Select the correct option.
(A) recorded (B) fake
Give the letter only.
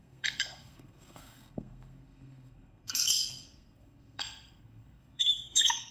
B